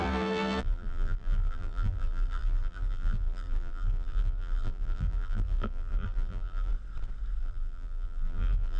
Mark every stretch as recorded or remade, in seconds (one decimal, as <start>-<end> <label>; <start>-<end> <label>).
0.0-6.7 remade; 6.7-7.4 recorded; 7.4-8.8 remade